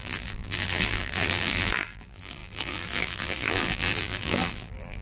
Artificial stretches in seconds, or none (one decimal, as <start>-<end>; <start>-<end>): 0.0-5.0